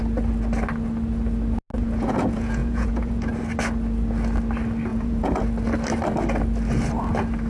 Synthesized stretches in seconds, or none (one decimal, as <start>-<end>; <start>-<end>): 1.7-3.3; 4.9-5.4